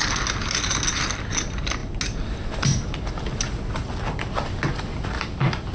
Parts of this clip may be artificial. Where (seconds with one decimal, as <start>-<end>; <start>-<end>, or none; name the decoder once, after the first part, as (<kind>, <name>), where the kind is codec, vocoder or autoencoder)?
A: none